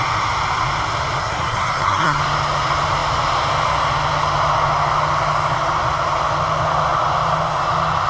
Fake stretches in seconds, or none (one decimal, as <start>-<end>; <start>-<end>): 1.2-2.2